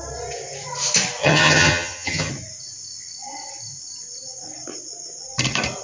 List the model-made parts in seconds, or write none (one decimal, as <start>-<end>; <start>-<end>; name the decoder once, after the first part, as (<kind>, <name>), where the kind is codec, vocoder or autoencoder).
1.2-2.3 (vocoder, HiFi-GAN)